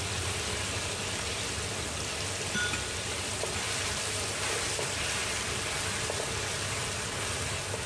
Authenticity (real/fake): real